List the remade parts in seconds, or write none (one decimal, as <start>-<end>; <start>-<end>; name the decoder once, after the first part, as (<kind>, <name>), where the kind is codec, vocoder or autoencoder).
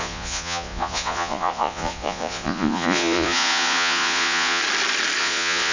0.0-4.6 (vocoder, Vocos); 5.2-5.7